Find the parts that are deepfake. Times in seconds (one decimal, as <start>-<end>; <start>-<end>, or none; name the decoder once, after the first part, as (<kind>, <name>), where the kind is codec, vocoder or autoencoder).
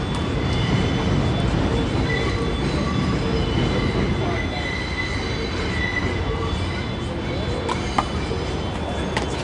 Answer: none